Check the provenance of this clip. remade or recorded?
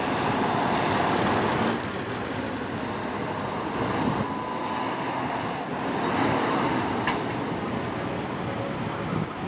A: recorded